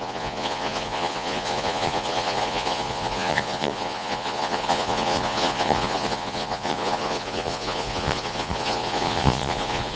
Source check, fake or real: fake